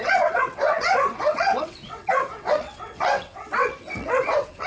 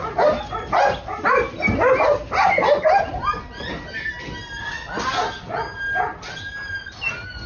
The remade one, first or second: first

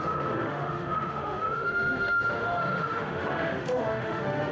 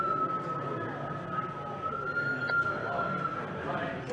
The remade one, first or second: first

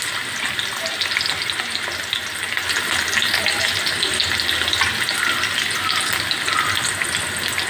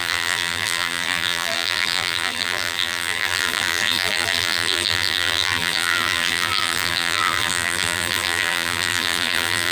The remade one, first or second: second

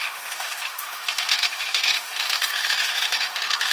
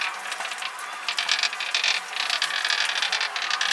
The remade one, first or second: first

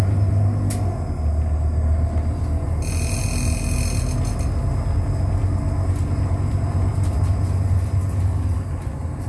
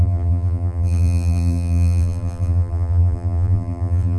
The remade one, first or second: second